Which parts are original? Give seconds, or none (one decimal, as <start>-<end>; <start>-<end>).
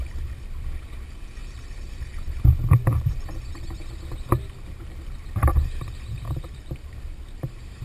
none